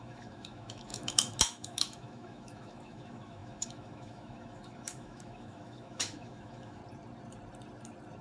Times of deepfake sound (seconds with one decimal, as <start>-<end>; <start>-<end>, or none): 0.0-6.8